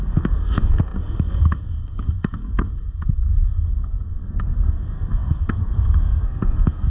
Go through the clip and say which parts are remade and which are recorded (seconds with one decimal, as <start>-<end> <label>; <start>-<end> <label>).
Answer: 0.0-6.9 remade